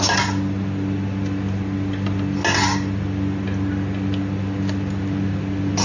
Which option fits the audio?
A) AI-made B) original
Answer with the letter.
B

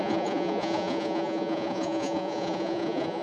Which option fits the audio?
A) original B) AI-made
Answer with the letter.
B